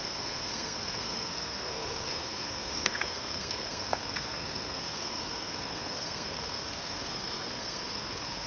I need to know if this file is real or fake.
fake